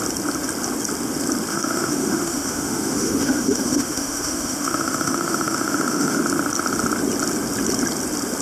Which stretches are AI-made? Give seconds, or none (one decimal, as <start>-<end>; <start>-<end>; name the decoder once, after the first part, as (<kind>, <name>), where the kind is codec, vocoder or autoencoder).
1.5-6.2 (autoencoder, DAC-VAE)